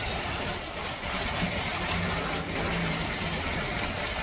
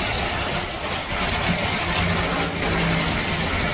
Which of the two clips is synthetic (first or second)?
first